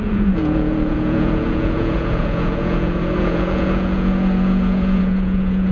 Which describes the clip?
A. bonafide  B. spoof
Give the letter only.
B